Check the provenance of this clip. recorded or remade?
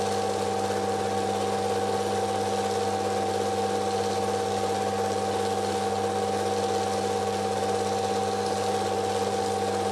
recorded